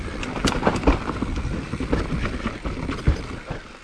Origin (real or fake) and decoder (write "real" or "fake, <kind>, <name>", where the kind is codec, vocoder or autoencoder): real